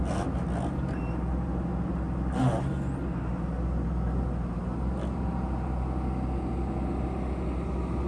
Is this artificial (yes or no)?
no